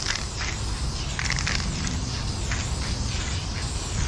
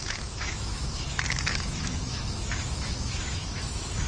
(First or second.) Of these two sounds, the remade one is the second